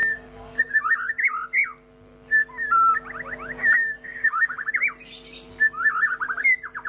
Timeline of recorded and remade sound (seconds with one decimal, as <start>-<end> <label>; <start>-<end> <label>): 0.0-0.6 remade; 0.6-3.6 recorded; 3.6-4.7 remade; 4.7-6.9 recorded